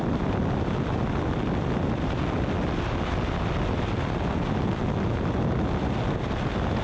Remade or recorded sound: recorded